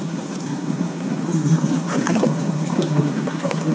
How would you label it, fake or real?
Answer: fake